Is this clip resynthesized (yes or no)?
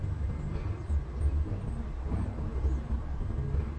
no